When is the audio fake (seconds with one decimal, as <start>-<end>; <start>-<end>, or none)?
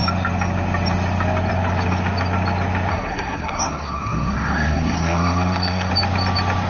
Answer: 2.9-5.9